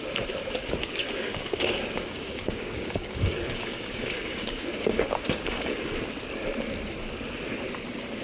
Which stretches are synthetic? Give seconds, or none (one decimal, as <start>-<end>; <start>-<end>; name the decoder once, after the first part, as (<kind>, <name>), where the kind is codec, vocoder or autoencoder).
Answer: 0.8-5.7 (codec, DAC)